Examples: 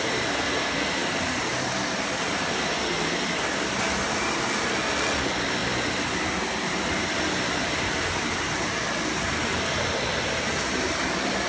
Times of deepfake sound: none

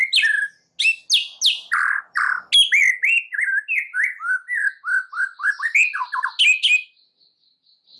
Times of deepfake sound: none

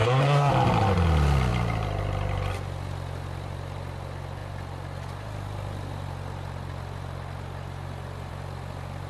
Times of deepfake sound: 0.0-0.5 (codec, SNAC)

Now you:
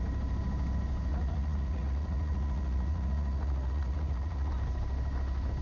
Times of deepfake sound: 1.1-4.5 (vocoder, Vocos)

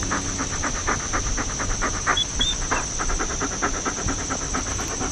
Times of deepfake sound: 2.1-4.3 (vocoder, BigVGAN v2)